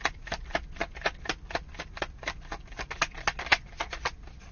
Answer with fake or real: real